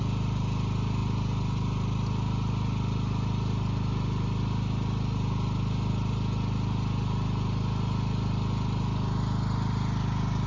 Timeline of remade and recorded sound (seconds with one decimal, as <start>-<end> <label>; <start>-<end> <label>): 0.0-10.5 recorded